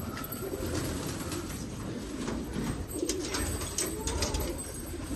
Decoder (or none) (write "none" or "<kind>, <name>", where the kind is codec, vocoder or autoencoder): none